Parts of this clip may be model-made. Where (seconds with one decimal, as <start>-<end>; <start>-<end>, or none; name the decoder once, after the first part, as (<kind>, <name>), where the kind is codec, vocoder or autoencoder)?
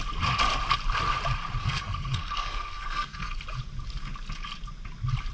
1.6-3.4 (codec, SNAC)